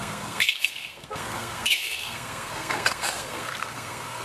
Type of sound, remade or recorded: remade